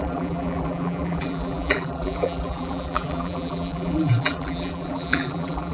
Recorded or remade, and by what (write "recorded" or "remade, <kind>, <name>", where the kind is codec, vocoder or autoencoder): remade, vocoder, BigVGAN v2